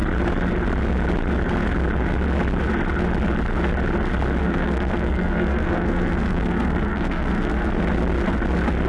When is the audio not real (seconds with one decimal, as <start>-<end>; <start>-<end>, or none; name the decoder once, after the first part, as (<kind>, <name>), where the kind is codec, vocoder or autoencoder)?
4.4-7.7 (codec, SNAC)